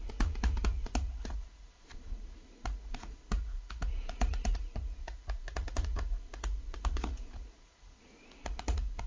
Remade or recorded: remade